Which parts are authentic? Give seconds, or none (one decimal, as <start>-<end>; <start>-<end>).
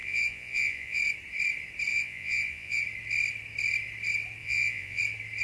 1.0-1.9; 2.8-4.4; 5.0-5.4